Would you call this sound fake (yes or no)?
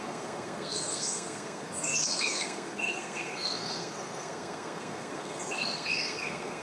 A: yes